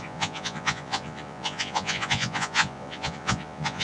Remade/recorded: remade